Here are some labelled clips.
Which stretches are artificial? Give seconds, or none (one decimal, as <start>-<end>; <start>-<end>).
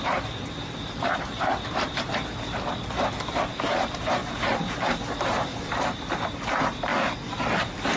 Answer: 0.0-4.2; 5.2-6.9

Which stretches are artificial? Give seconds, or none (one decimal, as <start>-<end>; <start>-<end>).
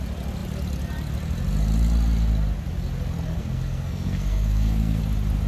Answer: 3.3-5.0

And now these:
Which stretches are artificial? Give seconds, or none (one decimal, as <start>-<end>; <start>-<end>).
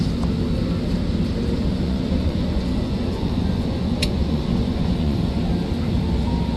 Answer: 1.7-5.4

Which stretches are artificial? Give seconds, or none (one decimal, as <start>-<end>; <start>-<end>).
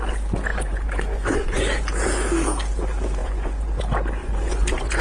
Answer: 0.5-1.6; 3.2-3.8; 4.2-5.0